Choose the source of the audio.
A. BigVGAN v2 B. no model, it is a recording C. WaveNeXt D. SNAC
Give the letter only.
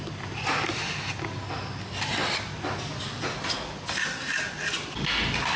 B